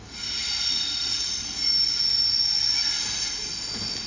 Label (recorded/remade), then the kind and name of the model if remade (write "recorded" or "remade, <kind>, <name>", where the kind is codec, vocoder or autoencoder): recorded